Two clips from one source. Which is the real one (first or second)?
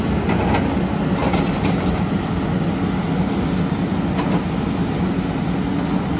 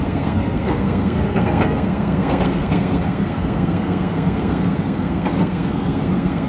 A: first